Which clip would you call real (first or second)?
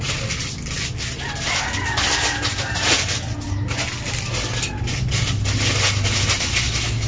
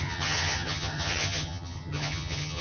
first